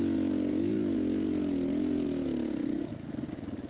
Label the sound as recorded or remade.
recorded